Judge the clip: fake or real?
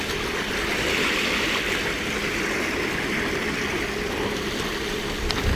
fake